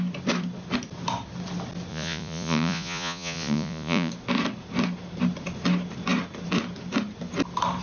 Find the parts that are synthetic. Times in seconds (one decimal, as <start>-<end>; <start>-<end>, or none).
1.9-4.1